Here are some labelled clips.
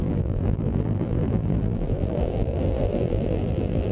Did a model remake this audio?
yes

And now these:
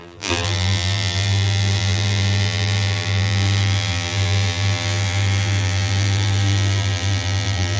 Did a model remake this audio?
yes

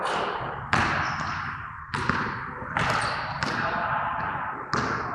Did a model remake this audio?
no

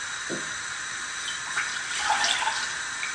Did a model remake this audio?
no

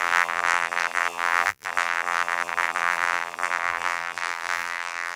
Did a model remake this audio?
yes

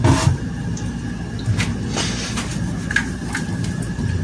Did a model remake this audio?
no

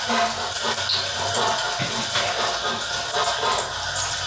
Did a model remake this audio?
no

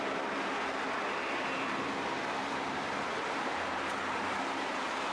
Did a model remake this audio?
yes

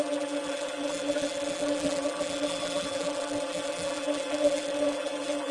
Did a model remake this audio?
yes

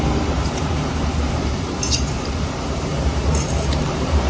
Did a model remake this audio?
yes